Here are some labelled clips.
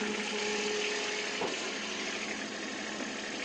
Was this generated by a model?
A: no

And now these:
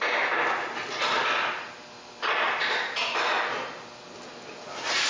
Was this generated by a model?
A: no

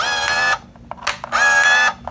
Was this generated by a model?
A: no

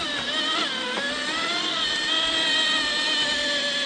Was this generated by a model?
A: no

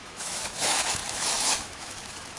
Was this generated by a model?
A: yes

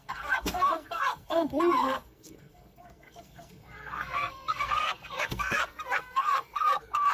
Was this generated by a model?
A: yes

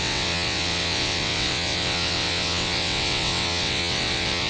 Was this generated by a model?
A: yes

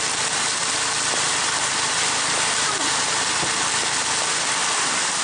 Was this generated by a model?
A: no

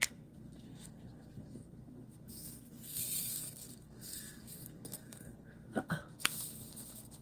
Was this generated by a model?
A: yes